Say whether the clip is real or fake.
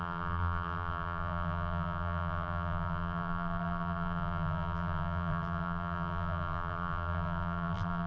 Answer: fake